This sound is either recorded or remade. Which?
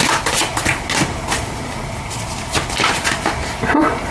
recorded